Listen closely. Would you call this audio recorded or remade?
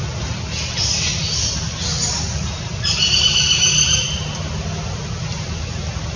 recorded